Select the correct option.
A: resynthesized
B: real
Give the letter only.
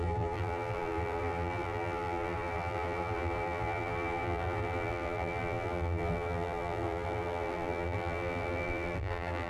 A